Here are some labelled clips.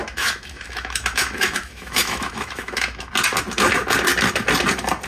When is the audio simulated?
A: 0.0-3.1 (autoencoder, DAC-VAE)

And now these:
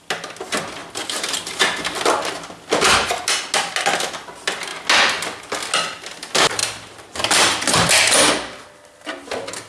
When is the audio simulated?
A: 0.8-2.3 (vocoder, BigVGAN v2); 6.6-7.9

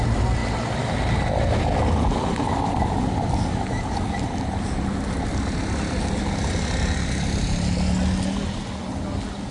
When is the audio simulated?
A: none

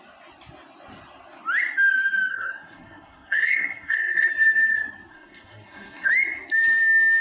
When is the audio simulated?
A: 2.3-4.3 (codec, SNAC); 5.1-6.1

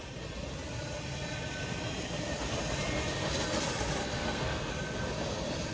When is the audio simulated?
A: 4.0-4.7 (codec, SNAC)

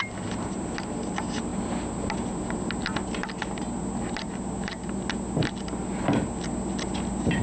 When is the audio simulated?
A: none

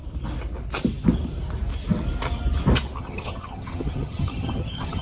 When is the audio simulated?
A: 3.0-5.0 (vocoder, HiFi-GAN)